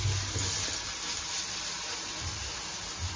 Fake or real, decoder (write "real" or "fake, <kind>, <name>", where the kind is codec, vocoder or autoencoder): real